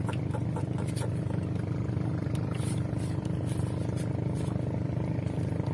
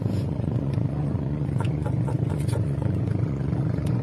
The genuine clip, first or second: first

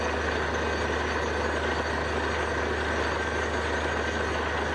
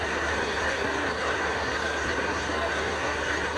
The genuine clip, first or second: first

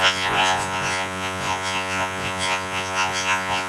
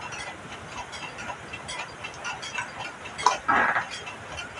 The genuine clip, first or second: second